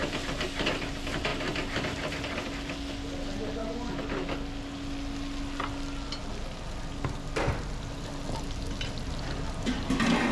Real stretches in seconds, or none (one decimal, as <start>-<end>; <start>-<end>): 0.0-1.3; 2.1-10.3